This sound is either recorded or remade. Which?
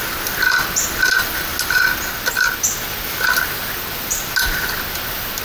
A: recorded